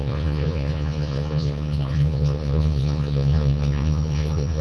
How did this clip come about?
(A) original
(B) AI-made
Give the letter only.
B